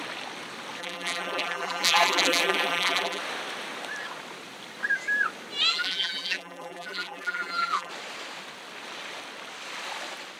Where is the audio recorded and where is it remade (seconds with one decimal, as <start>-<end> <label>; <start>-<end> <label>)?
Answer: 0.0-0.8 recorded; 0.8-3.2 remade; 3.2-5.7 recorded; 5.7-7.9 remade; 7.9-10.4 recorded